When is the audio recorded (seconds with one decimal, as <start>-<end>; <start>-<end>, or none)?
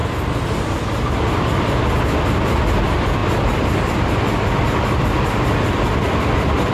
0.0-1.1